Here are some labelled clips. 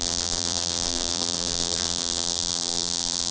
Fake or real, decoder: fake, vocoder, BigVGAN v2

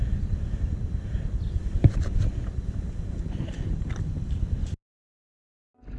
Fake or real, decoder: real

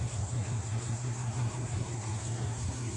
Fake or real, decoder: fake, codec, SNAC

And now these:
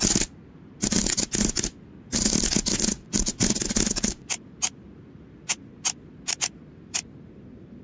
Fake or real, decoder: real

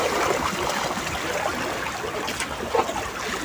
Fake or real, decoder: real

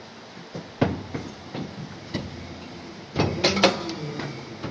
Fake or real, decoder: real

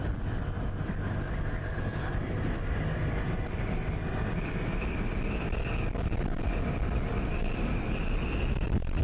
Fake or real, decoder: real